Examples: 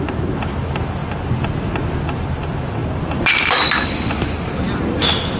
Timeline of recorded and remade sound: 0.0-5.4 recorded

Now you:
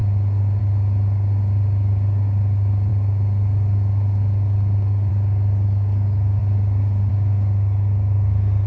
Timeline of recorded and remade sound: 0.0-8.7 recorded

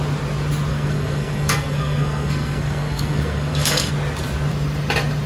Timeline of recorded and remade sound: 0.0-0.7 recorded; 0.7-3.9 remade; 3.9-5.3 recorded

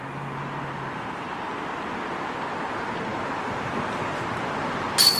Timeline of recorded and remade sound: 0.0-5.2 recorded

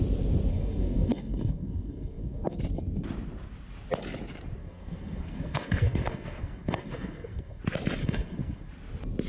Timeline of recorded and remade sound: 0.0-0.5 recorded; 0.5-2.6 remade; 2.6-4.6 recorded; 4.6-7.6 remade; 7.6-8.0 recorded; 8.0-8.7 remade; 8.7-9.3 recorded